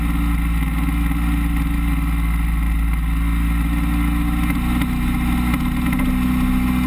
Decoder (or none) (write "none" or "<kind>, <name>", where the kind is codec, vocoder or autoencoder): none